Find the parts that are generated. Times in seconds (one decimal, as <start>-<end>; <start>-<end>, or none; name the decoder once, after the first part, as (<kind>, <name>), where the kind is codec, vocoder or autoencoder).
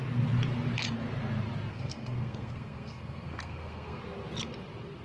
1.7-4.0 (codec, SNAC)